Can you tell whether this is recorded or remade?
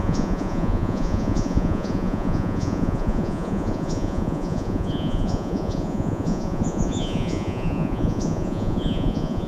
remade